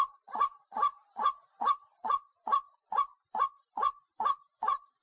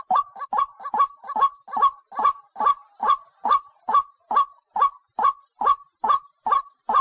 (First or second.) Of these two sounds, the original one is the second